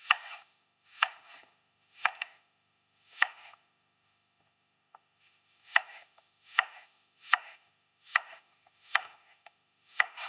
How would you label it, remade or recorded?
remade